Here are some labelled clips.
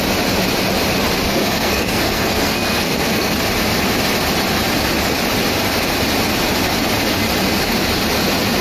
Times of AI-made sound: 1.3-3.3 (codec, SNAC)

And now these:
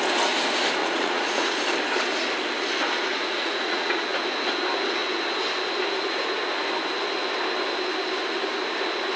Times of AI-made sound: 0.8-1.6 (vocoder, Vocos); 3.1-4.2